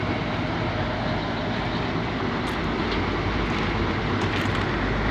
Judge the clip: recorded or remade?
recorded